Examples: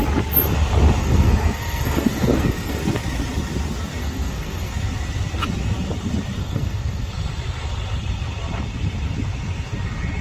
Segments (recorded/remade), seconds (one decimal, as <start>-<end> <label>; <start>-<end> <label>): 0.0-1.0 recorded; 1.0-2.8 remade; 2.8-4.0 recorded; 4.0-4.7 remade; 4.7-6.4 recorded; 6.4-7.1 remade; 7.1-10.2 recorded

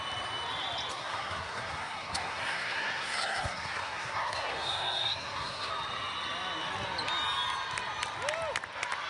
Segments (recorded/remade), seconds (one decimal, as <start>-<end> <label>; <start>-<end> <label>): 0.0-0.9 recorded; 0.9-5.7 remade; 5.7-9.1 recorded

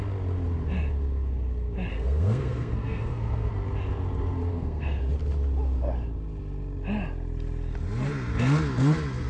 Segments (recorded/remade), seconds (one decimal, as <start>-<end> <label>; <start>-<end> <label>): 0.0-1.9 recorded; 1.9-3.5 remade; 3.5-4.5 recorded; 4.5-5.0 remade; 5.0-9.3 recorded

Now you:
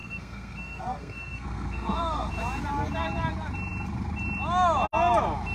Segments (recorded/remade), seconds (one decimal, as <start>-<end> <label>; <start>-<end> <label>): 0.0-2.3 remade; 2.3-5.5 recorded

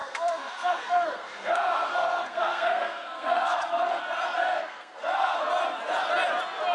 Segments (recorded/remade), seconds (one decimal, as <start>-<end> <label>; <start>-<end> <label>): 0.0-4.0 remade; 4.0-4.4 recorded; 4.4-5.5 remade; 5.5-6.7 recorded

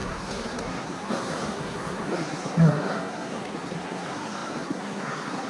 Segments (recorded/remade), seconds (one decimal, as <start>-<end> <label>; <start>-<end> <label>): 0.0-5.5 remade

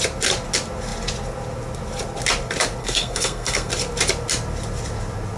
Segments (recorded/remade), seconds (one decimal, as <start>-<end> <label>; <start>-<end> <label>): 0.0-2.8 recorded; 2.8-3.7 remade; 3.7-5.4 recorded